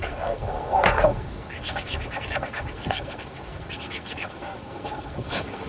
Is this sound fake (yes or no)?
yes